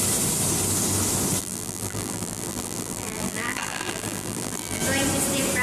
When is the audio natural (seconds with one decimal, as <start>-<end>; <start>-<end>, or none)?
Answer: 0.0-1.4; 4.8-5.6